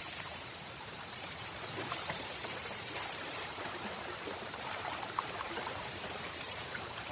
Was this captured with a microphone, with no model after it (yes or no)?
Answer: no